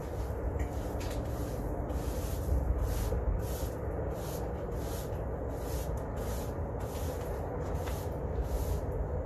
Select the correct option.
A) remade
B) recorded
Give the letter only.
B